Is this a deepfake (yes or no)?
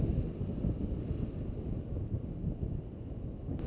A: no